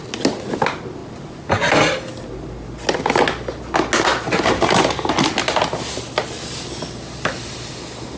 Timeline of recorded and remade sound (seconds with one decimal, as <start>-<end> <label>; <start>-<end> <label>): 0.0-8.2 recorded